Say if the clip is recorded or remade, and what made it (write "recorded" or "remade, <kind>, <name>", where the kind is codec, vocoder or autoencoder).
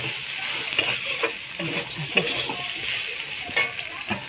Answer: recorded